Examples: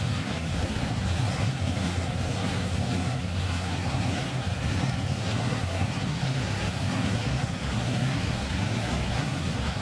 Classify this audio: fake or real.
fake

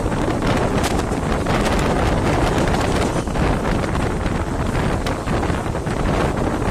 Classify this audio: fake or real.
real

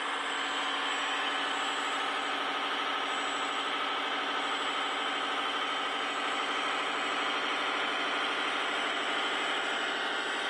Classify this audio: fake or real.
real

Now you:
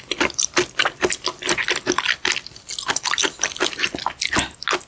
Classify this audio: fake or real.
real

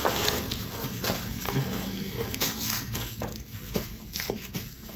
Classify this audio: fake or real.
fake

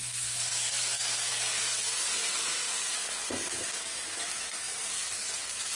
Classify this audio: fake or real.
fake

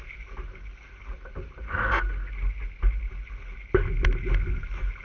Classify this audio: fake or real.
real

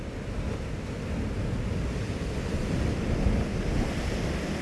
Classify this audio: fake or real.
real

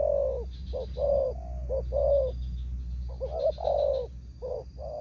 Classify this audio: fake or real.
real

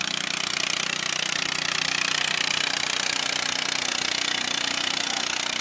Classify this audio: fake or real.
real